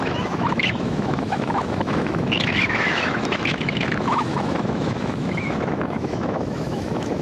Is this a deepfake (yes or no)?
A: yes